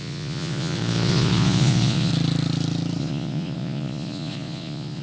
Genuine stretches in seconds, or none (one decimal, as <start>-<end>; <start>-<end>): 2.1-3.0

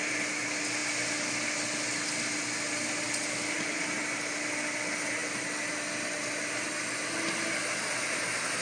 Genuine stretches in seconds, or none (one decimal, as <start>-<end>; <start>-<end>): 0.0-8.6

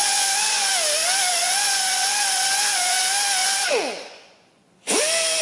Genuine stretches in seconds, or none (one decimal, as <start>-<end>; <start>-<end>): 0.7-1.3; 3.0-3.4; 5.0-5.4

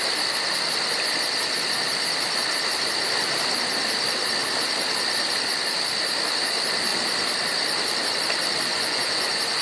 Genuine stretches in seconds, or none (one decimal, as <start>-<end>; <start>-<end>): 0.0-8.7

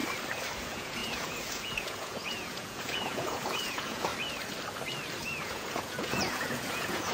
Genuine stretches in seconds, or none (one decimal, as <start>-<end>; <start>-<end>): 0.0-0.6; 4.1-5.2

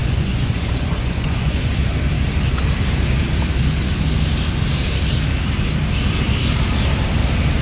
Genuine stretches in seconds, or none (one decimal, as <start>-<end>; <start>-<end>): 1.7-7.6